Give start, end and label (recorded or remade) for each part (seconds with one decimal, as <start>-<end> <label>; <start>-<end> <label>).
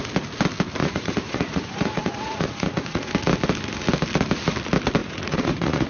0.0-0.8 recorded; 0.8-3.1 remade; 3.1-5.0 recorded; 5.0-5.9 remade